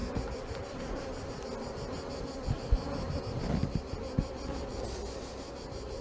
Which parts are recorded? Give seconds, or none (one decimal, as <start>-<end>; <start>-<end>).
0.0-4.7